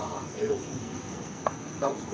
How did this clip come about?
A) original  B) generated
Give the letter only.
B